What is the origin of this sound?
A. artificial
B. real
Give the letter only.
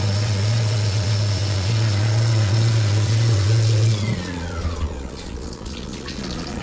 A